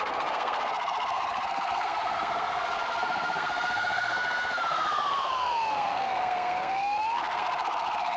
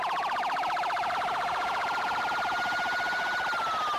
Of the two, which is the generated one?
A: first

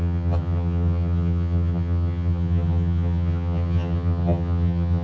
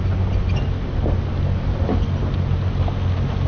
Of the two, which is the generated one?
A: first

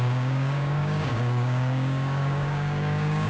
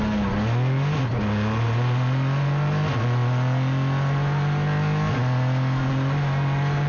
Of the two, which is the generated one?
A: first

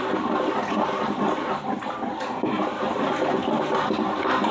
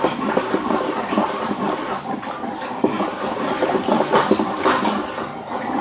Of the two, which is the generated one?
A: second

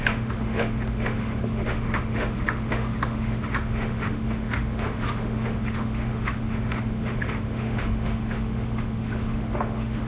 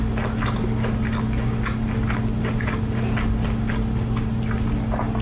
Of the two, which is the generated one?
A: first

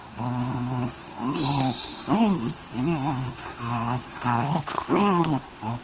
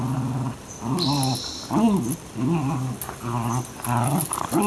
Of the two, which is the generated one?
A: first